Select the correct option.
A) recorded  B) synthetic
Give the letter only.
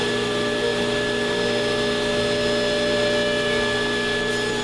A